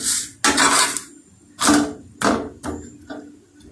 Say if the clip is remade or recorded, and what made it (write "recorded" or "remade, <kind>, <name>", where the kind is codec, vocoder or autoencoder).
recorded